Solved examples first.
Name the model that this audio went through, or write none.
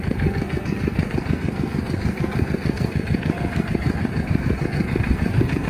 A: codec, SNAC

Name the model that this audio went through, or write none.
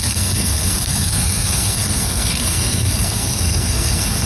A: codec, SNAC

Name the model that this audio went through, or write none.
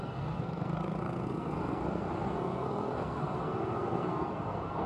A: codec, SNAC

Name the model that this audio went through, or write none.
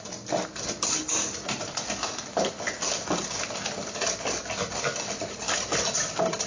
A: none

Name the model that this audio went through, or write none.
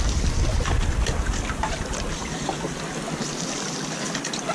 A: none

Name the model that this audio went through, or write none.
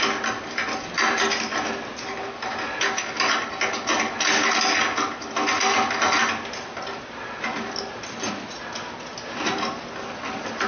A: none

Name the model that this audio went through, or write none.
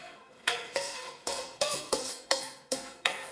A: codec, SNAC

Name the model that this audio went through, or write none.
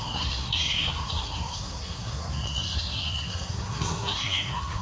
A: codec, SNAC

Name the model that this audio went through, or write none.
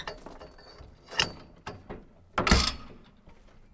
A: none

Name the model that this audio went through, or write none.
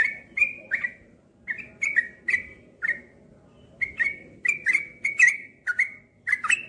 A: none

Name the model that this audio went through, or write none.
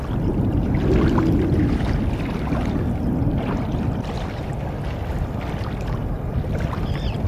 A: none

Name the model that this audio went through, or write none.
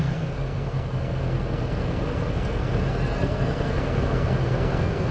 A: codec, SNAC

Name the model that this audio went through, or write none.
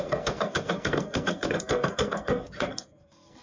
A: codec, SNAC